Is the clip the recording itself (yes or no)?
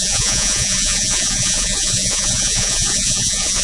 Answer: no